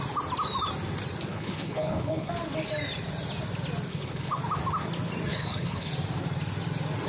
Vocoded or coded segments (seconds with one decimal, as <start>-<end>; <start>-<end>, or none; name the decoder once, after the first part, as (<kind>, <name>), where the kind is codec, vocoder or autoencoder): 1.3-2.3 (codec, HILCodec); 3.9-4.4; 5.3-5.9